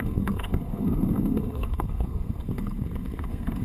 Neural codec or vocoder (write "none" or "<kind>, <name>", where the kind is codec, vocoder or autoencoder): codec, SNAC